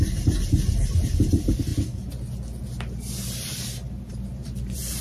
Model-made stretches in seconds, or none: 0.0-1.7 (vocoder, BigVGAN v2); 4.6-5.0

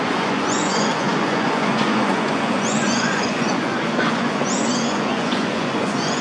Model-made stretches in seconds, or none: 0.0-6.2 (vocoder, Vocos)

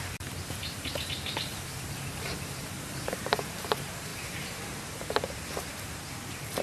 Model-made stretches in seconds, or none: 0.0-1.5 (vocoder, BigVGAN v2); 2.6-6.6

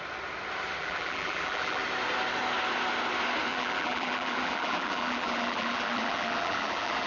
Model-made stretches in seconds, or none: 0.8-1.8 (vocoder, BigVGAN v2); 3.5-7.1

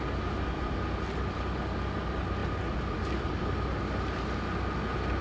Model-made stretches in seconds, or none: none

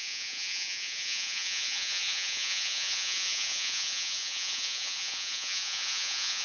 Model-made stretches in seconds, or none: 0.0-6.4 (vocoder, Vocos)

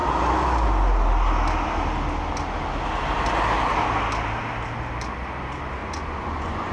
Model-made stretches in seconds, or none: 5.8-6.7 (vocoder, Vocos)